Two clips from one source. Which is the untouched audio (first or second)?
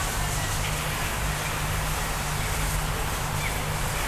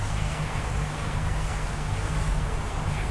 first